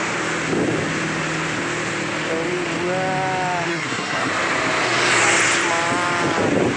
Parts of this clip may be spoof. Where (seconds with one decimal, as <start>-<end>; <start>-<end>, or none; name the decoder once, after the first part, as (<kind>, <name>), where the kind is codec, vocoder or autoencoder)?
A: 3.7-4.3 (codec, SNAC)